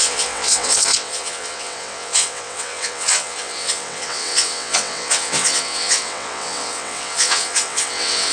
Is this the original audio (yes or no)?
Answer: no